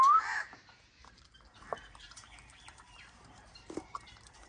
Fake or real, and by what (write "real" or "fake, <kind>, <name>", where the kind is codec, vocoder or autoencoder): fake, vocoder, BigVGAN v2